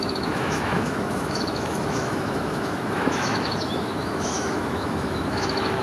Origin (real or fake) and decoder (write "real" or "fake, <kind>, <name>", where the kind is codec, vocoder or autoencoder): fake, autoencoder, DAC-VAE